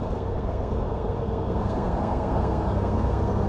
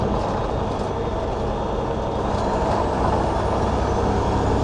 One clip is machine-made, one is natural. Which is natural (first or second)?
second